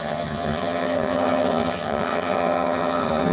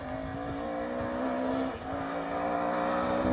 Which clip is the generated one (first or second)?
first